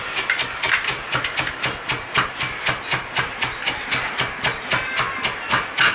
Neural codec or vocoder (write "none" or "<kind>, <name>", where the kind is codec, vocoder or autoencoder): none